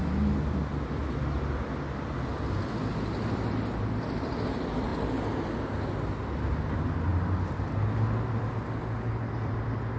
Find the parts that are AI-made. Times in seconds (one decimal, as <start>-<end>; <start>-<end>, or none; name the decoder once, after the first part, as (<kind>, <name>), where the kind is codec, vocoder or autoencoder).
none